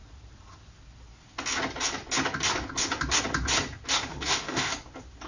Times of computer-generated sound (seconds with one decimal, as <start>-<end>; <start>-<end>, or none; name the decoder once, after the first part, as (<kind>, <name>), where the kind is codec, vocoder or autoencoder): 4.1-4.7 (autoencoder, DAC-VAE)